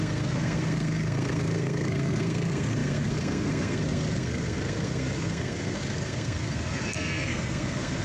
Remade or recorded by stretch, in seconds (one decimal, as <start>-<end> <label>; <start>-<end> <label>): 0.0-8.0 remade